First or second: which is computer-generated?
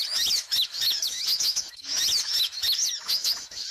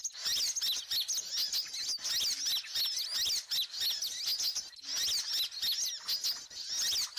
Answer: first